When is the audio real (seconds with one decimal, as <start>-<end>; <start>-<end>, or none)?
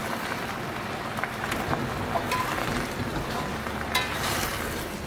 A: 0.0-5.1